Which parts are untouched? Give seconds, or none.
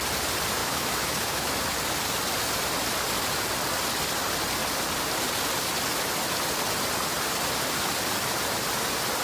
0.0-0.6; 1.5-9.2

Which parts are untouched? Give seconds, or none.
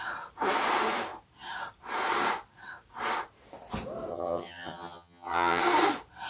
0.0-4.1; 5.6-6.3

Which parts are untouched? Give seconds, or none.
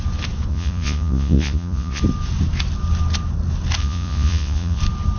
0.0-0.5; 2.0-3.8; 4.8-5.2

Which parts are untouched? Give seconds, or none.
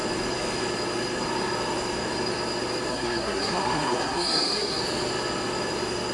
0.0-2.9; 4.8-6.1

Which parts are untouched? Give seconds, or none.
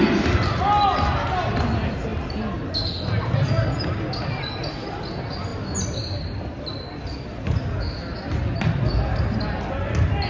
0.0-10.3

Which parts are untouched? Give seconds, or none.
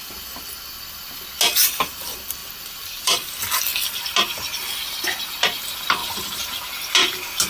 0.0-2.4; 3.3-6.0; 6.8-7.5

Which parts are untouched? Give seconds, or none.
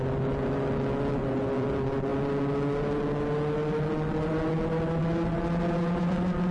0.0-6.5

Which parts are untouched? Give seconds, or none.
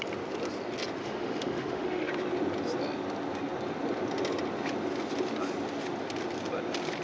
0.0-1.0; 2.1-7.0